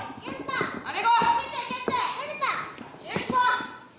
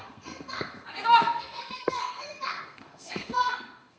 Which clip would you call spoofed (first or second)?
second